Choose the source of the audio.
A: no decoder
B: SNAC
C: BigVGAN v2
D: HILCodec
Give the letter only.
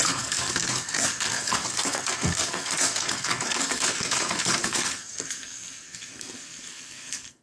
B